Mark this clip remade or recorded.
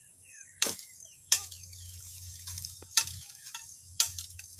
remade